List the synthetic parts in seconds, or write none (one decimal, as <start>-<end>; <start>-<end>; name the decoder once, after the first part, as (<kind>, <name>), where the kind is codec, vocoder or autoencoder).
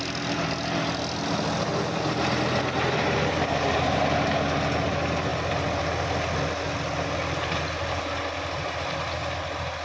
none